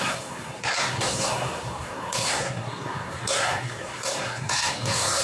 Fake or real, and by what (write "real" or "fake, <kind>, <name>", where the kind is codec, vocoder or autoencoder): fake, codec, SNAC